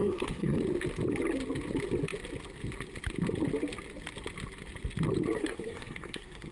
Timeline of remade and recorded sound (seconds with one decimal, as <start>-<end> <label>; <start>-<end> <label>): 0.0-0.6 remade; 0.6-5.4 recorded; 5.4-6.5 remade